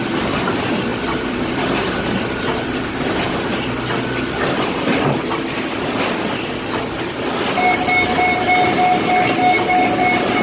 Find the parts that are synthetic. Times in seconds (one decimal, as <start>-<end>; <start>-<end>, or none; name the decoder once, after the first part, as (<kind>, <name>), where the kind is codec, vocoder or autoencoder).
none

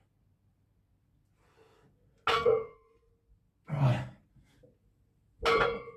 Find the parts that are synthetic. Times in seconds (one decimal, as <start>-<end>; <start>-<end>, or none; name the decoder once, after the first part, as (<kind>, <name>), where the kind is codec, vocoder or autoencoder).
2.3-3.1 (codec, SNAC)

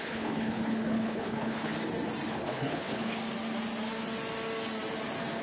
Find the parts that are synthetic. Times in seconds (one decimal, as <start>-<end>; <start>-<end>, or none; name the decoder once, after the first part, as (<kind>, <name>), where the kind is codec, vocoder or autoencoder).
0.0-1.7 (codec, HILCodec); 2.3-3.2

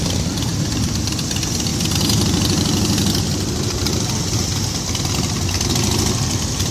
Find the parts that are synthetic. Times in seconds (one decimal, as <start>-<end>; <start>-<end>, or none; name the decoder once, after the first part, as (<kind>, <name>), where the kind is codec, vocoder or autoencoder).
0.5-1.1 (vocoder, BigVGAN v2)